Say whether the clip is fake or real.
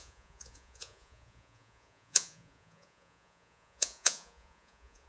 fake